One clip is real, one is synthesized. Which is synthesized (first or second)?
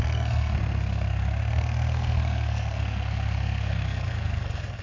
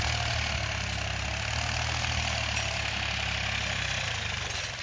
first